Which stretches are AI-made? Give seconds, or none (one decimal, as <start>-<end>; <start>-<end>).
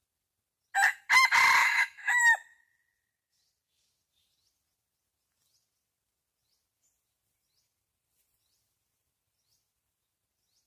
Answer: 1.6-2.2